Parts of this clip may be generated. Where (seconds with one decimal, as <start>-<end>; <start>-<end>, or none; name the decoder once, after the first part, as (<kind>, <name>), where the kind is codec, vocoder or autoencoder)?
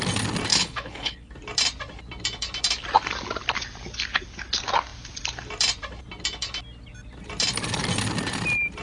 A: 0.5-1.3 (codec, HILCodec)